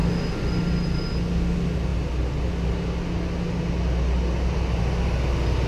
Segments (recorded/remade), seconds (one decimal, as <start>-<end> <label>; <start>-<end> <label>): 0.0-5.7 recorded